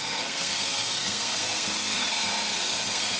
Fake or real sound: fake